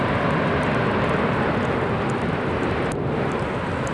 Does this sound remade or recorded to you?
recorded